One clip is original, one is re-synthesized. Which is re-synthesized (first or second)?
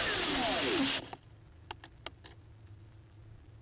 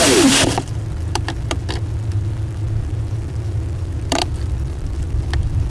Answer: second